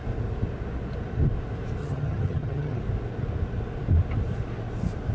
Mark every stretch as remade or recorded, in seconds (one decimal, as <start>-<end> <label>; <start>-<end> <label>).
0.0-1.8 recorded; 1.8-2.8 remade; 2.8-5.1 recorded

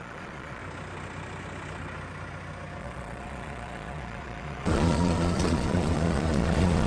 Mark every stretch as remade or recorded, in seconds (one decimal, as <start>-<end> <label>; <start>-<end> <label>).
0.0-0.6 remade; 0.6-2.8 recorded; 2.8-6.9 remade

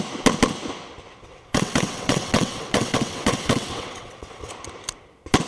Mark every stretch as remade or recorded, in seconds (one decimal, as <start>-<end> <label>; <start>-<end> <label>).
0.0-1.2 recorded; 1.2-4.5 remade; 4.5-5.5 recorded